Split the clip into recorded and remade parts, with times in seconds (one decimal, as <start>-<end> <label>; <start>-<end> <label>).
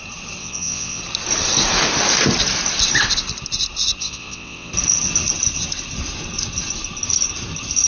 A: 0.0-0.4 recorded; 0.4-1.0 remade; 1.0-4.0 recorded; 4.0-4.7 remade; 4.7-7.9 recorded